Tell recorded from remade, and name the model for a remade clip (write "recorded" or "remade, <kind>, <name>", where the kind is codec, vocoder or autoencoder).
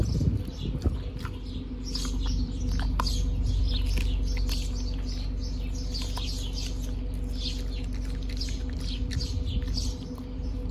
recorded